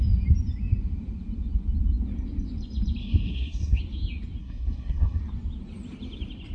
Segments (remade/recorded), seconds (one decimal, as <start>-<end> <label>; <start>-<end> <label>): 0.0-3.0 recorded; 3.0-3.8 remade; 3.8-4.4 recorded; 4.4-5.2 remade; 5.2-6.5 recorded